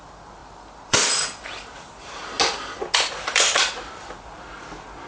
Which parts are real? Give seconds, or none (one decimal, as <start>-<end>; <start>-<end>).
2.2-3.3